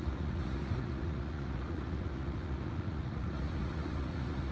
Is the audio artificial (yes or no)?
yes